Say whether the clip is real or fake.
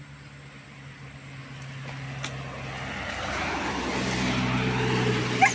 real